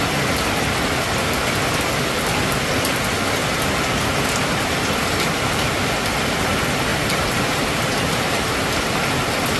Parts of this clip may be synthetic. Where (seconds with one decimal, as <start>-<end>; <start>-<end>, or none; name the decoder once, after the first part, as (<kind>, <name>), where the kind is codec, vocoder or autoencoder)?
6.9-8.6 (vocoder, BigVGAN v2)